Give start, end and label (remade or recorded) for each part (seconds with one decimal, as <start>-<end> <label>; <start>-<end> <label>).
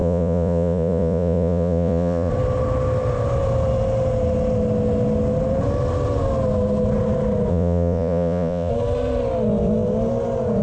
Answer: 0.0-2.3 remade; 2.3-7.5 recorded; 7.5-8.7 remade; 8.7-10.6 recorded